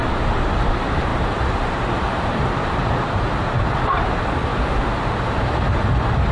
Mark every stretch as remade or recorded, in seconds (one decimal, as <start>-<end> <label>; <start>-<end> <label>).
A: 0.0-6.3 remade